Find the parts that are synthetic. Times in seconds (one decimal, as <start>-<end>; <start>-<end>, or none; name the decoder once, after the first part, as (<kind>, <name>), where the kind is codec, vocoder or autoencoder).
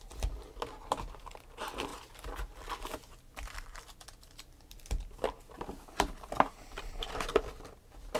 none